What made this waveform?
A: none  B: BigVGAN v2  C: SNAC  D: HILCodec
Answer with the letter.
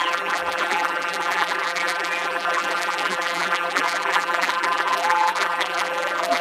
B